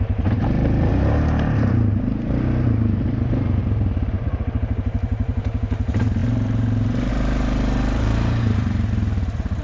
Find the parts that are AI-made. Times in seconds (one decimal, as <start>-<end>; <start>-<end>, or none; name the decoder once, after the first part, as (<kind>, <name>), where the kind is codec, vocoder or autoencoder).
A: 0.0-9.6 (vocoder, BigVGAN v2)

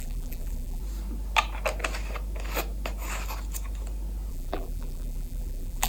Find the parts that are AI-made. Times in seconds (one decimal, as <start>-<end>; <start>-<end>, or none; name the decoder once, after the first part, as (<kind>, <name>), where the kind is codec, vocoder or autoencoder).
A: 0.0-0.8 (vocoder, BigVGAN v2); 4.3-5.9

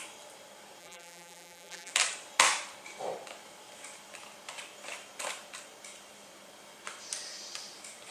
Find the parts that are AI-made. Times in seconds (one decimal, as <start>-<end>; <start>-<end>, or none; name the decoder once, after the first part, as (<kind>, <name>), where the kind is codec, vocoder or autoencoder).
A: 0.8-1.9 (vocoder, BigVGAN v2)

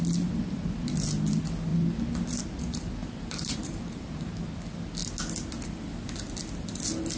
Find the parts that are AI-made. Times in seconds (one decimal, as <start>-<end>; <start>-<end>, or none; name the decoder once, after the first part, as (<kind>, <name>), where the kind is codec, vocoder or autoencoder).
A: 3.0-4.1 (vocoder, BigVGAN v2)

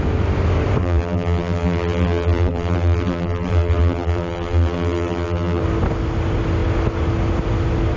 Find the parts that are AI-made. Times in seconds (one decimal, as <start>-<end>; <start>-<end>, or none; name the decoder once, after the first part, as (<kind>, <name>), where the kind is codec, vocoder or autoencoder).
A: 0.8-5.6 (vocoder, BigVGAN v2)